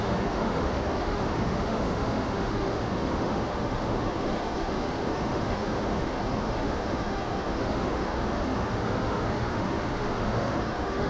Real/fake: fake